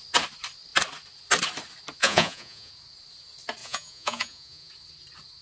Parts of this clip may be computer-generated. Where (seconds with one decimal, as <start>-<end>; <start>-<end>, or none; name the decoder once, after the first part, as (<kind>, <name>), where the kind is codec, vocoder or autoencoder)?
2.0-2.7 (vocoder, Vocos); 3.6-4.7

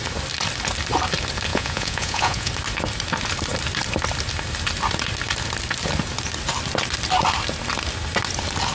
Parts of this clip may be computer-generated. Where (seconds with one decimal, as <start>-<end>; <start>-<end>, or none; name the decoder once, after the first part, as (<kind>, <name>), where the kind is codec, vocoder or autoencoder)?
1.5-2.5 (vocoder, Vocos)

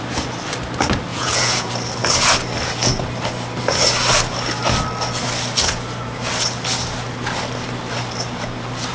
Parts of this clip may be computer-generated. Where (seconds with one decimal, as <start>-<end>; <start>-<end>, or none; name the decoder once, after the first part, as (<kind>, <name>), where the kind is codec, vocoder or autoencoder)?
1.1-1.7 (vocoder, Vocos)

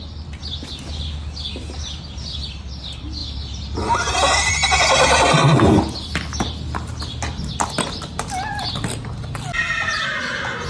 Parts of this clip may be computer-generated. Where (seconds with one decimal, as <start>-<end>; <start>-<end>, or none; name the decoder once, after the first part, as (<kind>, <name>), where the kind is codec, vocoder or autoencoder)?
none

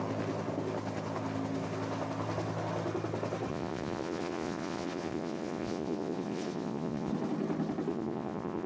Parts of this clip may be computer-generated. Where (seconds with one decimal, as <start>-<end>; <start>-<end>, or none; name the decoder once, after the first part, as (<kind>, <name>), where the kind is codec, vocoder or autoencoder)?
3.5-7.1 (vocoder, Vocos); 7.9-8.7

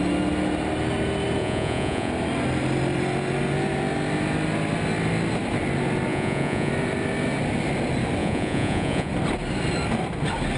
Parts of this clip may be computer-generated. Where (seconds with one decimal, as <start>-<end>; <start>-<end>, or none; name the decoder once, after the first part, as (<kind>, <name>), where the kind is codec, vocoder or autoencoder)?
1.4-2.1 (vocoder, Vocos); 6.1-6.7; 8.2-9.1